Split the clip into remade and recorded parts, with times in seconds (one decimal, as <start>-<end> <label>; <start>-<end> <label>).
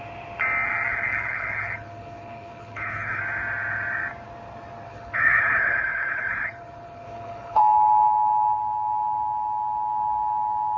0.0-0.9 recorded; 0.9-3.2 remade; 3.2-4.9 recorded; 4.9-7.6 remade; 7.6-10.8 recorded